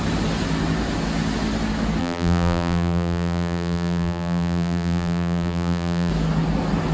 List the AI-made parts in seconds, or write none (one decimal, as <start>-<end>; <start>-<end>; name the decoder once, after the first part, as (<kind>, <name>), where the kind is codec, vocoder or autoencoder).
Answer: 2.0-6.1 (vocoder, BigVGAN v2)

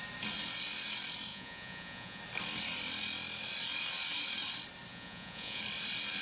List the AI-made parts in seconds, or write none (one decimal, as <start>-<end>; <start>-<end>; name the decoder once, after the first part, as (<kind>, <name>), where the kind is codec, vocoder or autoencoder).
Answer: 1.3-2.2 (vocoder, Vocos); 4.9-5.6

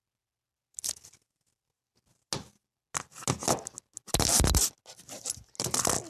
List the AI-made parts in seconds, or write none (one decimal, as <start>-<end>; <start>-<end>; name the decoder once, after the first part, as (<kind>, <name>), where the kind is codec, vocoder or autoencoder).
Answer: none